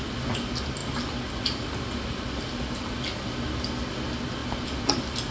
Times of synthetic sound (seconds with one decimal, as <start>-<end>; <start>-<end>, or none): none